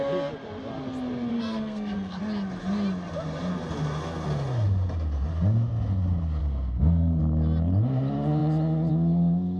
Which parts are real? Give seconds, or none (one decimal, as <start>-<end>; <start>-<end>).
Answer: 0.0-1.3; 2.2-6.4; 7.2-9.6